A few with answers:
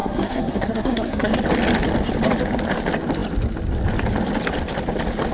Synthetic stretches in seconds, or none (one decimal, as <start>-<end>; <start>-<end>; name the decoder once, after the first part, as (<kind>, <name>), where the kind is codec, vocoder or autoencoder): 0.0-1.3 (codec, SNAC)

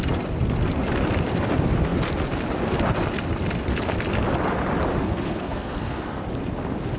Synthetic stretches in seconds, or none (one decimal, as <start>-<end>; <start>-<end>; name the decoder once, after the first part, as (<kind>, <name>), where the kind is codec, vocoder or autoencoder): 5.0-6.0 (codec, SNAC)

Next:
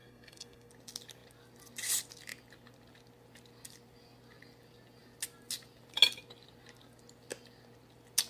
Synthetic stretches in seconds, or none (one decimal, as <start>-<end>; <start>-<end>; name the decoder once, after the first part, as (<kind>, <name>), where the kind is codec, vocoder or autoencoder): 0.0-0.7 (codec, SNAC)